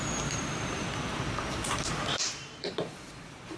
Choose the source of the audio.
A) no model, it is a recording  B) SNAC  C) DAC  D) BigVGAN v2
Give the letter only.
D